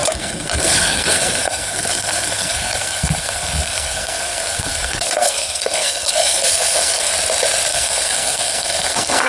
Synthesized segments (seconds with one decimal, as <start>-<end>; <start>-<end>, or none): 0.0-7.1; 7.7-9.3